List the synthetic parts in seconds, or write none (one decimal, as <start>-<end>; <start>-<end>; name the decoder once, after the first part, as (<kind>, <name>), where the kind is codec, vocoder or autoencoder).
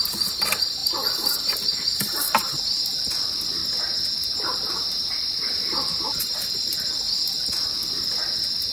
0.0-3.6 (vocoder, BigVGAN v2); 4.3-5.9; 6.5-8.7